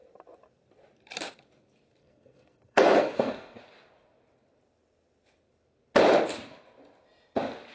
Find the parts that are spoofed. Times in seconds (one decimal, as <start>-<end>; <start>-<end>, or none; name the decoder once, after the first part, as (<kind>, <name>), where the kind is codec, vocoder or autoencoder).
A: 2.0-3.6 (codec, SNAC)